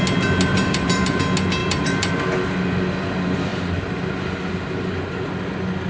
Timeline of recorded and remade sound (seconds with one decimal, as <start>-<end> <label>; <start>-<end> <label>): 0.0-0.5 recorded; 0.5-1.2 remade; 1.2-1.6 recorded; 1.6-2.1 remade; 2.1-3.5 recorded; 3.5-4.2 remade; 4.2-5.9 recorded